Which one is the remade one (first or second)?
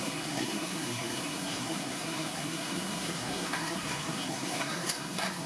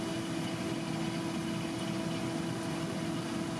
first